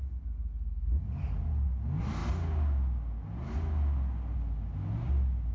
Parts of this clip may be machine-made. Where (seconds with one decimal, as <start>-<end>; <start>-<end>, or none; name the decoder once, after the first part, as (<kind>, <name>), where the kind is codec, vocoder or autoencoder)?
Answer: none